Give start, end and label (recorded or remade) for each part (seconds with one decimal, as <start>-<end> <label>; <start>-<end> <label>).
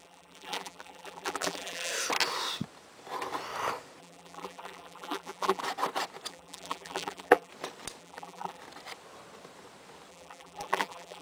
0.0-1.9 remade; 1.9-4.0 recorded; 4.0-5.6 remade; 5.6-6.3 recorded; 6.3-7.5 remade; 7.5-8.0 recorded; 8.0-8.6 remade; 8.6-10.1 recorded; 10.1-11.2 remade